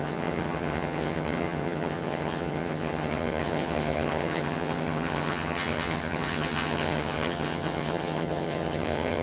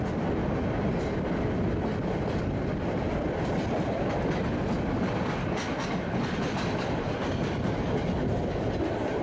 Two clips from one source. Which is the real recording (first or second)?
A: second